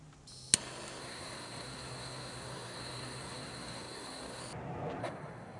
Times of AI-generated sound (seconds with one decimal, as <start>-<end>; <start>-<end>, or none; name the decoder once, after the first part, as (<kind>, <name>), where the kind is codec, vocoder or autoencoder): 1.0-4.4 (codec, SNAC); 5.0-5.6

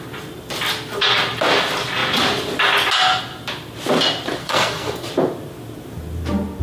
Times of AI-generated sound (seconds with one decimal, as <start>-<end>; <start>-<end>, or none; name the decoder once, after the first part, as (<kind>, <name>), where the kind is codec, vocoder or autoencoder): 4.4-5.1 (codec, SNAC)

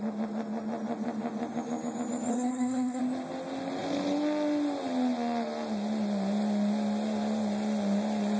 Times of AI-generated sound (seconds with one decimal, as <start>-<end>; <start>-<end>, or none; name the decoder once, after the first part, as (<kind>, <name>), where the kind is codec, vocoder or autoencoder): 2.3-3.0 (codec, SNAC)

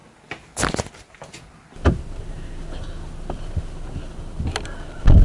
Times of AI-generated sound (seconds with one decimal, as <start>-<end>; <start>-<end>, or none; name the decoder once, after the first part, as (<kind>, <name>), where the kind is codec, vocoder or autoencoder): none

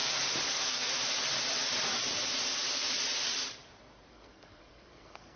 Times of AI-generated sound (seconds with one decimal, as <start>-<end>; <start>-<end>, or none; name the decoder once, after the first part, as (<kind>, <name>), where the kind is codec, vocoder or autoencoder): 0.5-0.9 (codec, SNAC); 4.1-5.4

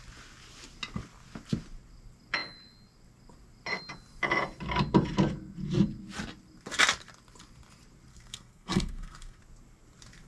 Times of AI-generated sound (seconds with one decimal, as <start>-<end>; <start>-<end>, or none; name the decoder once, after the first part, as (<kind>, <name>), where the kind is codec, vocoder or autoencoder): 8.1-9.4 (codec, SNAC)